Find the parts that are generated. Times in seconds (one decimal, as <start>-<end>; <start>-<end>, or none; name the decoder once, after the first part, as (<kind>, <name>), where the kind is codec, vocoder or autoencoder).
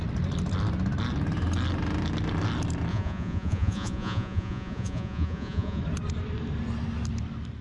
2.9-5.8 (vocoder, Vocos)